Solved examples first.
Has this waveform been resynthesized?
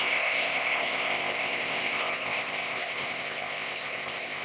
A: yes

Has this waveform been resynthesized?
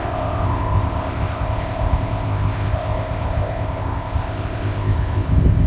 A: yes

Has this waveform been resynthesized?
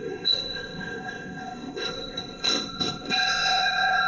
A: yes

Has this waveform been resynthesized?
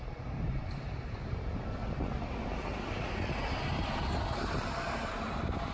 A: no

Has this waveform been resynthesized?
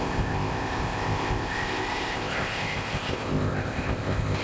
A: yes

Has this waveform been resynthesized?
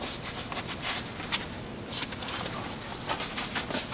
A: no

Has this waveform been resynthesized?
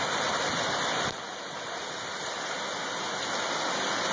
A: no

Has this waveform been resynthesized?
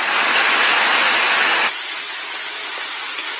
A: no